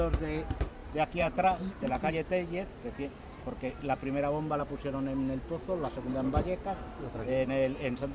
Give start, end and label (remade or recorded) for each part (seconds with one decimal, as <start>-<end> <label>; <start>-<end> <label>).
0.0-0.8 recorded; 0.8-2.1 remade; 2.1-8.1 recorded